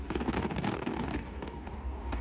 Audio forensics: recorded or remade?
remade